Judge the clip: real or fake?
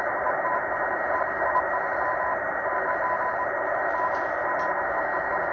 fake